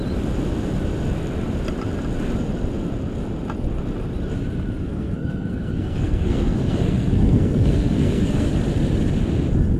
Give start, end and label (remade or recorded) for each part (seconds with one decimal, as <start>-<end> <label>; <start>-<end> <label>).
0.0-4.8 recorded; 4.8-8.5 remade; 8.5-9.8 recorded